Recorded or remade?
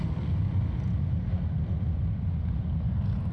recorded